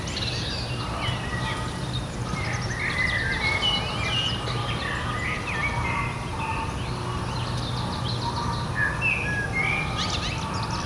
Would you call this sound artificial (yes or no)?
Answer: no